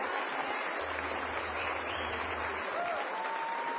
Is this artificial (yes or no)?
no